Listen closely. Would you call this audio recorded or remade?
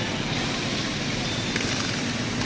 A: recorded